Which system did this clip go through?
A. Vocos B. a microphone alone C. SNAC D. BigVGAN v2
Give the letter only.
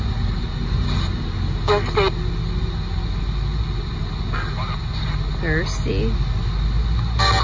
B